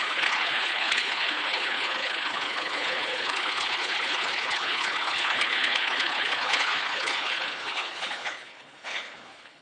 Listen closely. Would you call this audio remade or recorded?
remade